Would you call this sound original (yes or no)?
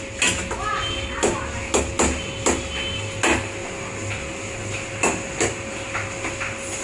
yes